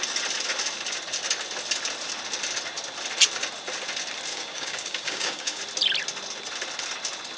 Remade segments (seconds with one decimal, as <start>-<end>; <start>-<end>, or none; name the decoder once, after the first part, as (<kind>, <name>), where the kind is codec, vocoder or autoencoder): 4.3-5.6 (codec, DAC)